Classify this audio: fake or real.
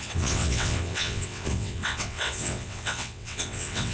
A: fake